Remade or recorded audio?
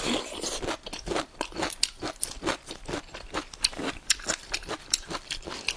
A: remade